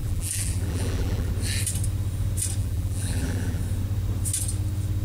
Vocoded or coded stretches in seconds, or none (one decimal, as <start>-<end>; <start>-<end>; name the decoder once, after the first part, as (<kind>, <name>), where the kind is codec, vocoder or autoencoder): 0.0-1.3 (vocoder, BigVGAN v2); 2.6-3.6

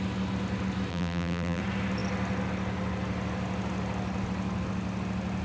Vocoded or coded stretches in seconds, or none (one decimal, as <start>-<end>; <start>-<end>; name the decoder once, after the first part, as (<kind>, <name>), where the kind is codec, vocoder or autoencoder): 0.9-1.6 (vocoder, BigVGAN v2)

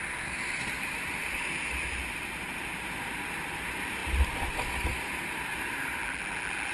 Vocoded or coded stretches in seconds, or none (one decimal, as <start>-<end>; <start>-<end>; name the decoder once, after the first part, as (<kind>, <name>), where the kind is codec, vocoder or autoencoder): 6.0-6.7 (vocoder, BigVGAN v2)

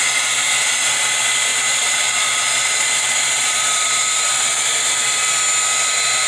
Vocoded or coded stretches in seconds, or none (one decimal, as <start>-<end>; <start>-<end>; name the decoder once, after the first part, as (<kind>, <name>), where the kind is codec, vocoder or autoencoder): 1.5-5.3 (vocoder, BigVGAN v2)

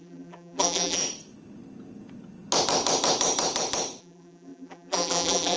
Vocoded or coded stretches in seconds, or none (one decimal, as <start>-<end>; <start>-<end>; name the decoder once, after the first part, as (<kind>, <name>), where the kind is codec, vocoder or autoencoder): 0.0-1.0 (vocoder, BigVGAN v2); 4.0-5.6

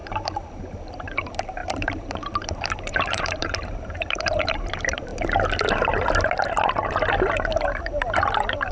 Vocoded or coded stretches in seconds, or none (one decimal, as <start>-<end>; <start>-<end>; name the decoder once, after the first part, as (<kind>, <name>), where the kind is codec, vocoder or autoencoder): 0.0-5.1 (vocoder, BigVGAN v2); 7.8-8.7

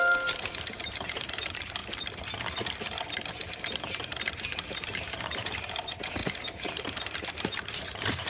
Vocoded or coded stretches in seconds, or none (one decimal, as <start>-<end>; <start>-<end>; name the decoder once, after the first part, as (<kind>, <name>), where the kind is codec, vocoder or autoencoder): 0.0-1.8 (vocoder, BigVGAN v2); 3.8-8.3

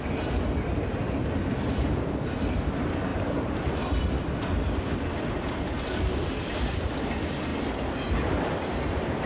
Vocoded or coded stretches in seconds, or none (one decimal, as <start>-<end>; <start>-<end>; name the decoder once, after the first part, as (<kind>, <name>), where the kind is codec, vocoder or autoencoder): 3.1-6.3 (vocoder, BigVGAN v2)